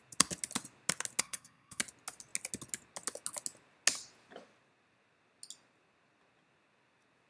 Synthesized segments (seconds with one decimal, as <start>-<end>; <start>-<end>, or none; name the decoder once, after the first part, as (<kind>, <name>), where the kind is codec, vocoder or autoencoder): 1.2-1.8 (codec, SNAC)